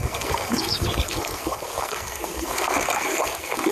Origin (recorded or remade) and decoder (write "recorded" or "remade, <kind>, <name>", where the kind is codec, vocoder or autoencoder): remade, codec, SNAC